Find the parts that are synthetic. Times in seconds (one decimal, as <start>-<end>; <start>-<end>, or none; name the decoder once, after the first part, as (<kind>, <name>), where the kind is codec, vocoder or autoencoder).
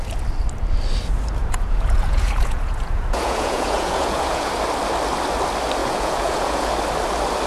1.4-4.5 (vocoder, Vocos); 5.8-6.7